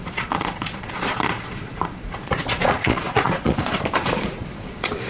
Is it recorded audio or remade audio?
remade